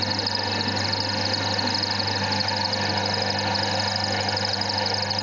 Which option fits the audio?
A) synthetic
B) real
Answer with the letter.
B